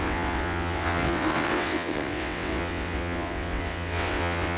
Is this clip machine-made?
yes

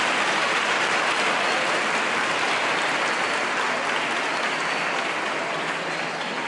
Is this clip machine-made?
no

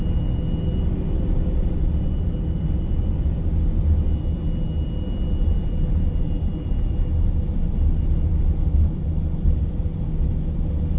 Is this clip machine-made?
no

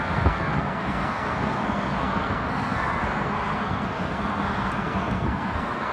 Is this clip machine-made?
yes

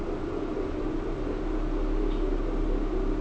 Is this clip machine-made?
no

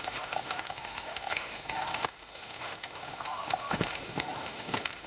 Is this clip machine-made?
yes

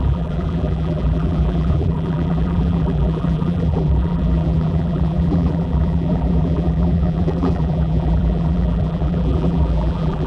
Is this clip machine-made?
yes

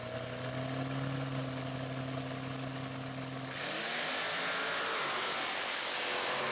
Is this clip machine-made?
no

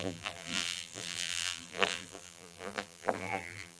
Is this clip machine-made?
yes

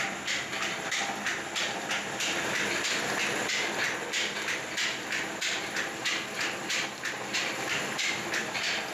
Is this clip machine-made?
yes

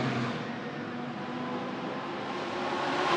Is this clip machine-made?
no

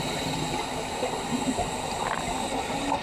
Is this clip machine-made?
no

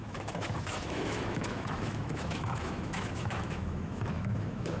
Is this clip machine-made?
yes